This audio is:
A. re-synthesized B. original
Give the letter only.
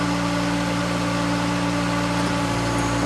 B